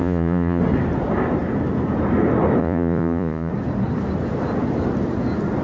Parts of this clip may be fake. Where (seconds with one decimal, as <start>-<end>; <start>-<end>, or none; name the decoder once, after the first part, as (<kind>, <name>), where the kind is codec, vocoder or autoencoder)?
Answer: 0.0-0.6 (vocoder, Vocos); 2.6-3.5

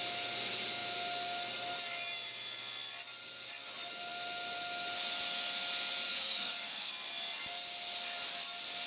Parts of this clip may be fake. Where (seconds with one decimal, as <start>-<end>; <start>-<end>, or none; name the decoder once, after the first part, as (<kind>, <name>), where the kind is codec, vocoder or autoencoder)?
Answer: 6.1-6.9 (codec, SNAC)

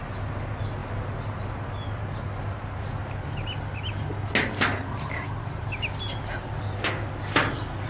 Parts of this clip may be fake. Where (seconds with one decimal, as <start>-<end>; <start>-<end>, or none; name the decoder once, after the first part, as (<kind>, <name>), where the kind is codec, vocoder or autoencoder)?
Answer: none

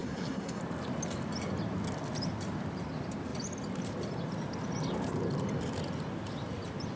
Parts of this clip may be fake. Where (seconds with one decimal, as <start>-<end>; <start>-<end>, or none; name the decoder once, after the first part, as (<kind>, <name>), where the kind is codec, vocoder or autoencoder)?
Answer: 0.0-0.6 (codec, SNAC)

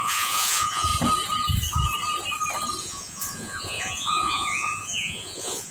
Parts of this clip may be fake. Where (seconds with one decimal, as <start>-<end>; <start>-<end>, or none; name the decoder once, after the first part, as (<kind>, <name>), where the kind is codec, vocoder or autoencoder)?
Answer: 0.0-0.9 (vocoder, Vocos); 2.8-5.7

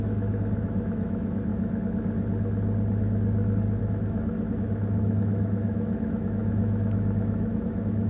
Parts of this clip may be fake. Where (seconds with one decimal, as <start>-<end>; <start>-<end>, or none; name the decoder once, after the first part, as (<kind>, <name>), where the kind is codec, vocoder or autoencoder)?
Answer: 0.0-1.5 (autoencoder, DAC-VAE); 3.8-8.1

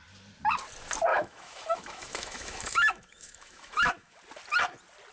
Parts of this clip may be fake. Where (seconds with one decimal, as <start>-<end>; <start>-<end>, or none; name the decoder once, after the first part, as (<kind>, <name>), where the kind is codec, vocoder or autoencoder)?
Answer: 1.1-4.2 (autoencoder, DAC-VAE)

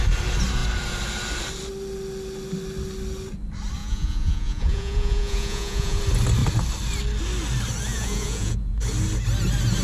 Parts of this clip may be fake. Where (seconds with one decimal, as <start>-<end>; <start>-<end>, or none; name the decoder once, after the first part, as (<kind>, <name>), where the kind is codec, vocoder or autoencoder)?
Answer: 3.8-6.0 (vocoder, Vocos); 7.9-8.8